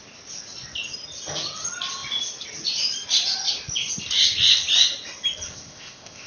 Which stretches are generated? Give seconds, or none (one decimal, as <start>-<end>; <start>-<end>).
5.5-6.3

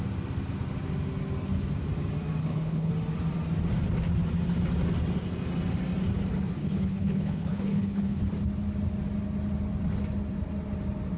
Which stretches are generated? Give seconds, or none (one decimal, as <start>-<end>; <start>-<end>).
2.4-2.9; 6.6-8.2